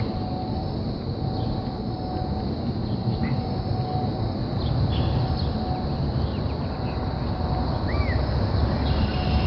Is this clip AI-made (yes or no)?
no